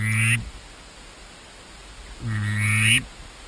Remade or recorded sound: recorded